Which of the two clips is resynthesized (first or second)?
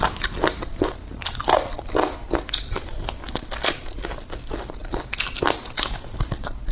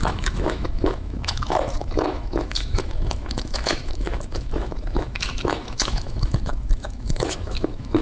second